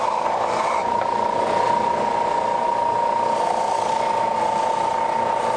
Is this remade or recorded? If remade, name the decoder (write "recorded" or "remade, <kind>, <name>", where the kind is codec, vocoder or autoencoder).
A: recorded